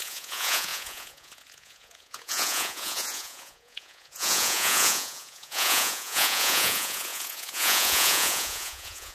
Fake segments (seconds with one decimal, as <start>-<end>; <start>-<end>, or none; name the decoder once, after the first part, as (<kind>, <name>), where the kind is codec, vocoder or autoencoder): 0.0-9.1 (vocoder, Vocos)